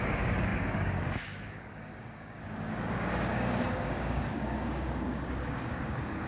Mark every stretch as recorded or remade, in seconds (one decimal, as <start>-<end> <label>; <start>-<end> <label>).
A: 0.0-6.3 remade